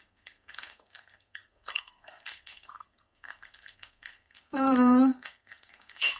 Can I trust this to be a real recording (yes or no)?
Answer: no